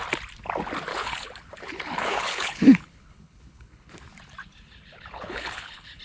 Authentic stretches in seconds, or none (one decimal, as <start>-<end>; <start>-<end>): 0.0-0.9; 3.9-4.4